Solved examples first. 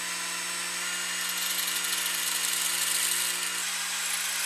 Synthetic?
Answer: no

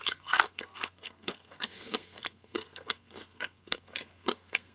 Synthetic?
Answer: yes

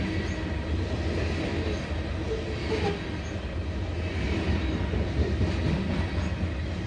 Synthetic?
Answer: no